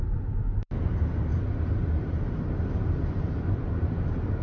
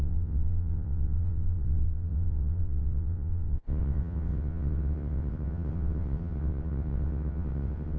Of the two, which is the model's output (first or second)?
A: second